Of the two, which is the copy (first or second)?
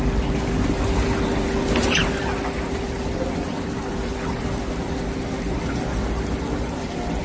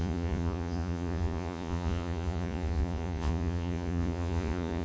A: second